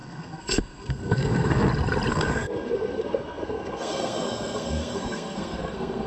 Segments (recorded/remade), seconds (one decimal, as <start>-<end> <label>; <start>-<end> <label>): 0.0-1.7 remade; 1.7-2.1 recorded; 2.1-6.1 remade